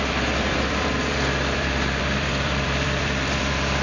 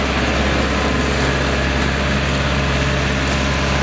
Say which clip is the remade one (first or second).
first